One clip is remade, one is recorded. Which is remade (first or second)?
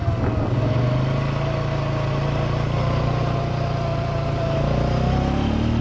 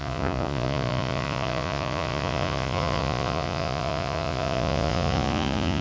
second